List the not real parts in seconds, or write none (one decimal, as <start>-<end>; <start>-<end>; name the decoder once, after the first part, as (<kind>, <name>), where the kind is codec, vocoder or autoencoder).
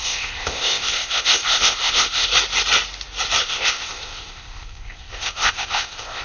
0.0-2.3 (codec, ZipCodec); 3.4-6.2